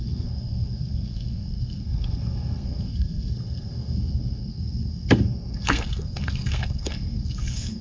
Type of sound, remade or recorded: remade